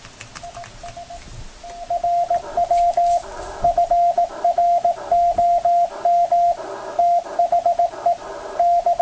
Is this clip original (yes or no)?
yes